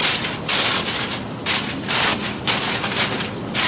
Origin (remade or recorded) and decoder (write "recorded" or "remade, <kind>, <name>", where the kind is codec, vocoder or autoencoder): recorded